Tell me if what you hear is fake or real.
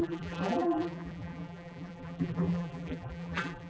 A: fake